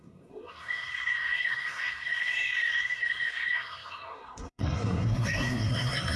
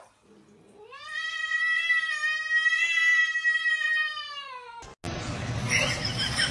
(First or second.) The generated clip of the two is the first